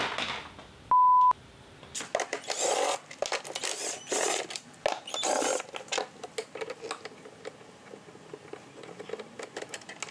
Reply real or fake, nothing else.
real